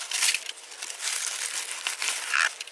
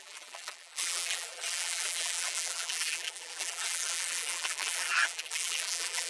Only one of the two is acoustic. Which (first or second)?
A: first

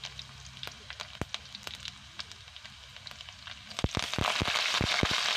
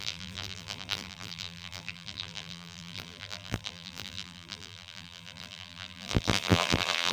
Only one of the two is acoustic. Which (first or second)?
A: first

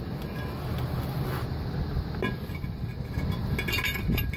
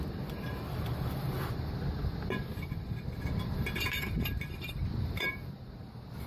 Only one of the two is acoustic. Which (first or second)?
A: first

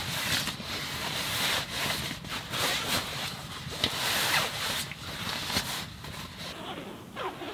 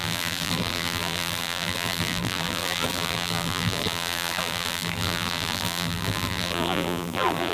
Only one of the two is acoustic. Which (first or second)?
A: first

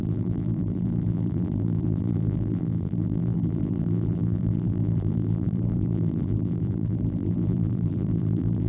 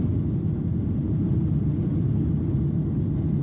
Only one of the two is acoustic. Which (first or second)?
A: second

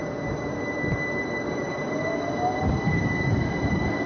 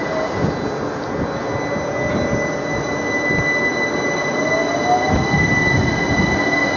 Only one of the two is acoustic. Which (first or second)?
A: second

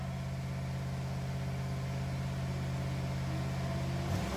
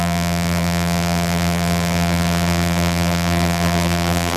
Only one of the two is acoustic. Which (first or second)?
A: first